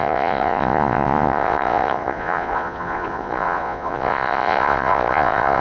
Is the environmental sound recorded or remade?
remade